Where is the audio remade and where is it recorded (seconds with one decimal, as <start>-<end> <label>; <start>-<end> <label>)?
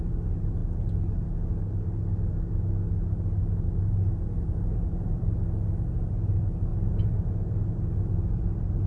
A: 0.0-8.9 recorded